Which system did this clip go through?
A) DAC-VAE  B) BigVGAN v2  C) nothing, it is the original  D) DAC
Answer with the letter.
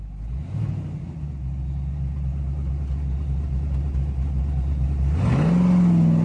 C